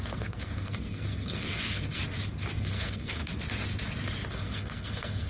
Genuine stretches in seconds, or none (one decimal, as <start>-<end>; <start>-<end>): 2.0-2.6; 3.2-4.3